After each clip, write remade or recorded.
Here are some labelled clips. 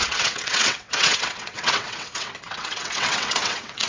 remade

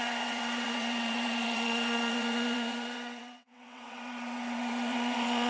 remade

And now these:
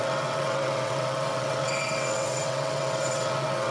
remade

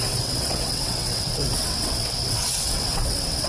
remade